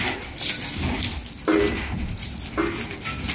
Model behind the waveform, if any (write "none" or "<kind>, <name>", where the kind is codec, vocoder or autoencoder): none